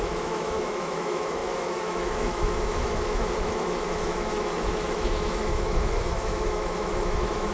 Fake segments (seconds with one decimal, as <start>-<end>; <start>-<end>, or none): 0.0-7.5